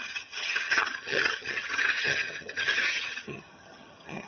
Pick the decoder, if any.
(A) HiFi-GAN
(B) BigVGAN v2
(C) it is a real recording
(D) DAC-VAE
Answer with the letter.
A